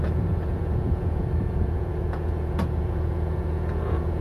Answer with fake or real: fake